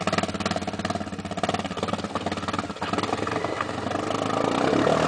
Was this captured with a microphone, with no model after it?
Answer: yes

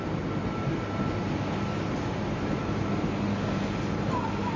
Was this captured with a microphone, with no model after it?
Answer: yes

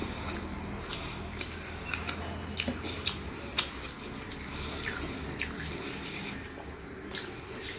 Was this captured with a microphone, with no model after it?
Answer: yes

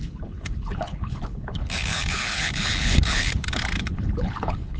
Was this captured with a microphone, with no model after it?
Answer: no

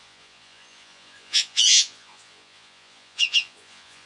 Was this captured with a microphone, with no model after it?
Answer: no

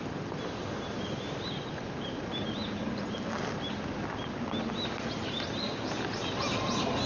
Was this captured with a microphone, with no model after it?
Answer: yes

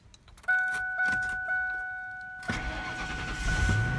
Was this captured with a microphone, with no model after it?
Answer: yes